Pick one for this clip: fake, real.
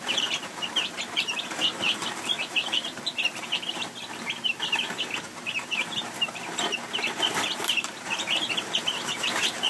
fake